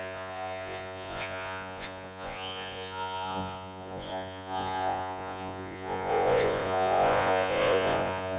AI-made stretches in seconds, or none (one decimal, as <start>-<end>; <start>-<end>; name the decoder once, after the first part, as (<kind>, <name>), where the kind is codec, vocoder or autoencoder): 0.0-8.4 (vocoder, Vocos)